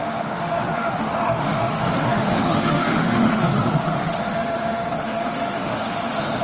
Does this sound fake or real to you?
fake